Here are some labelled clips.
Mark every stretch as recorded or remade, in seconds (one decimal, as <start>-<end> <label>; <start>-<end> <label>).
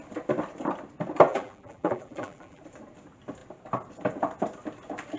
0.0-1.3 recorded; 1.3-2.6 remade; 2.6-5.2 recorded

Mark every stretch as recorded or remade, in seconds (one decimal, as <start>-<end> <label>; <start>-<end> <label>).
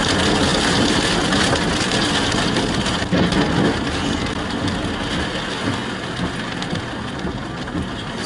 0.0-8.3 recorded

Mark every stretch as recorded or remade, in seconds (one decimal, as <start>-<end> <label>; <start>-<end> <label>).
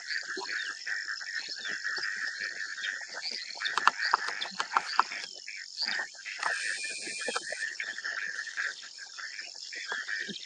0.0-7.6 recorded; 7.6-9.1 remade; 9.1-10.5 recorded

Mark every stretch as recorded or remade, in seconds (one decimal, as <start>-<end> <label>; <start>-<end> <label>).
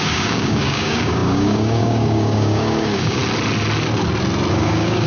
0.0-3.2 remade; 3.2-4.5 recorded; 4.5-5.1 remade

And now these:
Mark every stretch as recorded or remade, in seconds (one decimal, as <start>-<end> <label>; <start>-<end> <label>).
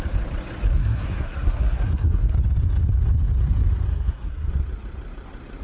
0.0-0.7 recorded; 0.7-2.3 remade; 2.3-3.9 recorded; 3.9-4.5 remade; 4.5-5.6 recorded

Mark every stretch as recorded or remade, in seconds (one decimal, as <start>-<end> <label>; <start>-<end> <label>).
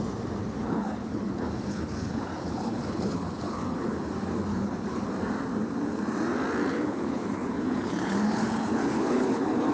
0.0-0.4 recorded; 0.4-4.1 remade; 4.1-4.5 recorded; 4.5-5.1 remade; 5.1-6.7 recorded; 6.7-9.7 remade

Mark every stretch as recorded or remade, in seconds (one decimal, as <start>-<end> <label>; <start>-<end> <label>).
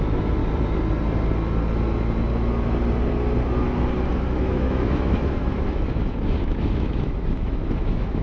0.0-0.4 remade; 0.4-4.1 recorded; 4.1-8.2 remade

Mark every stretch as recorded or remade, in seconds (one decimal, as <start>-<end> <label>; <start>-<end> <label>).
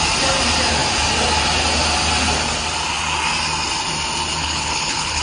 0.0-4.4 recorded; 4.4-5.2 remade